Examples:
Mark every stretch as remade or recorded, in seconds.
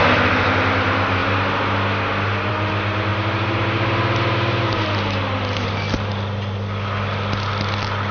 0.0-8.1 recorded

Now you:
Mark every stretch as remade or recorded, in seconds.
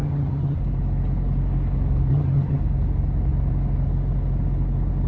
0.0-0.6 remade; 0.6-2.1 recorded; 2.1-2.6 remade; 2.6-5.1 recorded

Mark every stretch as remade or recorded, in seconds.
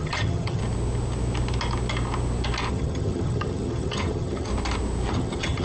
0.0-0.6 remade; 0.6-2.7 recorded; 2.7-4.5 remade; 4.5-5.1 recorded; 5.1-5.6 remade